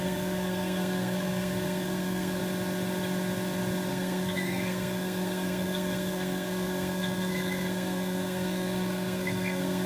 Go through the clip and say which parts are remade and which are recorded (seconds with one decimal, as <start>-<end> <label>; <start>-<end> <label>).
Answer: 0.0-2.4 remade; 2.4-3.9 recorded; 3.9-9.9 remade

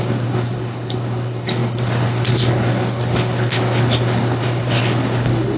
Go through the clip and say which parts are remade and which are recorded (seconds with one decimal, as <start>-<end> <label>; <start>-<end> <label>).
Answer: 0.0-5.6 remade

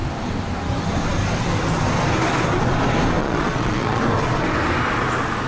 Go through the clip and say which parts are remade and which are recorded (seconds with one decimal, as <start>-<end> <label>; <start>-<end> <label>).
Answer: 0.0-3.2 recorded; 3.2-4.0 remade; 4.0-5.5 recorded

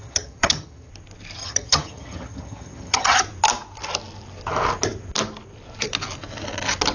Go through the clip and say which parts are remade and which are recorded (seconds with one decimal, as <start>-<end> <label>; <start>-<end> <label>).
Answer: 0.0-0.9 remade; 0.9-1.4 recorded; 1.4-3.2 remade; 3.2-6.9 recorded

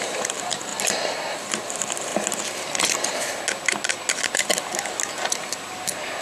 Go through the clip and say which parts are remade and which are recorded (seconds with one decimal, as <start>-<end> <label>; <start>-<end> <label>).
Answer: 0.0-2.1 remade; 2.1-5.5 recorded; 5.5-6.2 remade

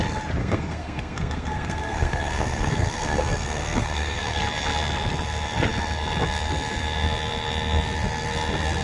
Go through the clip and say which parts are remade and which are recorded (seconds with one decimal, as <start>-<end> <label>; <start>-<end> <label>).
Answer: 0.0-0.4 recorded; 0.4-4.4 remade; 4.4-8.8 recorded

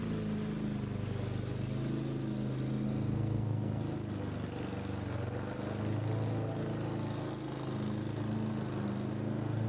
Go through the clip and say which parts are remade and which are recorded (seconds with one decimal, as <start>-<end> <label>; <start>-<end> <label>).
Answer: 0.0-3.1 recorded; 3.1-3.8 remade; 3.8-9.7 recorded

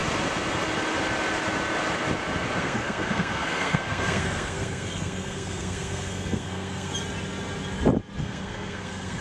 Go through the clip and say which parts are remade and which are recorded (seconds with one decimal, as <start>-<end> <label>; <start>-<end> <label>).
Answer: 0.0-2.6 recorded; 2.6-6.9 remade; 6.9-8.2 recorded; 8.2-9.2 remade